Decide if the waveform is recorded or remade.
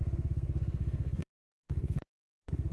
remade